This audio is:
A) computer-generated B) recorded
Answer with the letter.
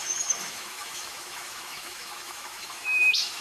A